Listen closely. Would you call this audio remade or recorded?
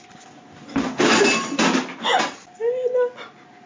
recorded